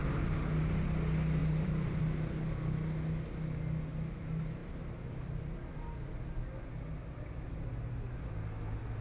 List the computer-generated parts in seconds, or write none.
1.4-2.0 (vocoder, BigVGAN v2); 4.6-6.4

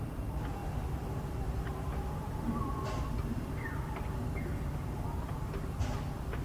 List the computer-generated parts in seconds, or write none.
0.6-4.4 (vocoder, BigVGAN v2)

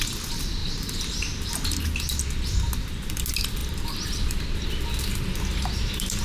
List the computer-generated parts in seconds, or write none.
0.6-1.5 (vocoder, BigVGAN v2); 3.6-4.7; 5.5-6.2

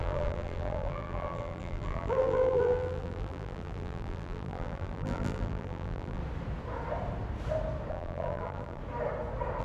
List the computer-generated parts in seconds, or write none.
0.0-6.2 (vocoder, BigVGAN v2); 7.9-8.8

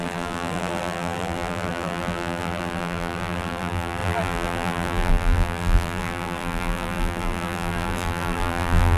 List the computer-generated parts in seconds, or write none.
0.0-9.0 (vocoder, BigVGAN v2)

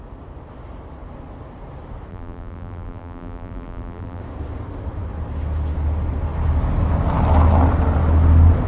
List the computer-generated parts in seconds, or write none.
2.1-4.2 (vocoder, BigVGAN v2)

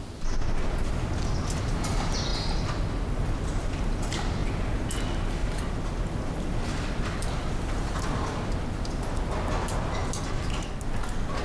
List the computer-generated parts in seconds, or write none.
2.3-2.9 (vocoder, BigVGAN v2); 5.4-8.0